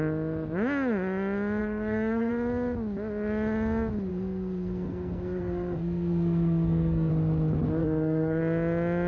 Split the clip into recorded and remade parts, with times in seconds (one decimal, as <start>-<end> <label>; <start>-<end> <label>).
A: 0.0-1.6 recorded; 1.6-2.3 remade; 2.3-4.1 recorded; 4.1-7.1 remade; 7.1-7.8 recorded; 7.8-8.4 remade; 8.4-9.1 recorded